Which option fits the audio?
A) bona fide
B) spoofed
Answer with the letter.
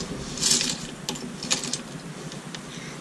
A